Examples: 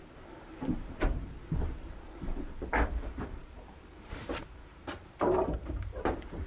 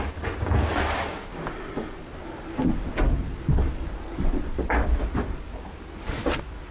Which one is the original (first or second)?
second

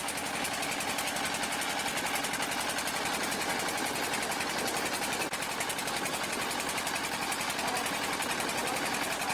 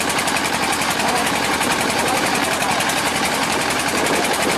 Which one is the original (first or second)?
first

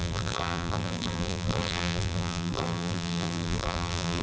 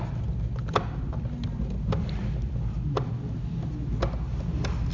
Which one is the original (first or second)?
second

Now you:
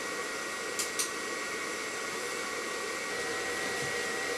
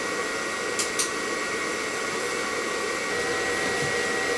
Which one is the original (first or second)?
second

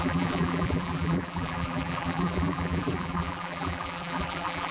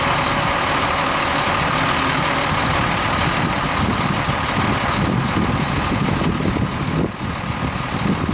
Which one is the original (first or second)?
second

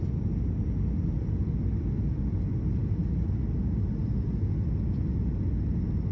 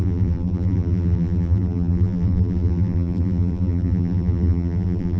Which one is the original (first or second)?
first